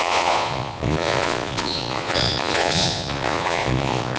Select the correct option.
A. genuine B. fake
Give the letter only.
B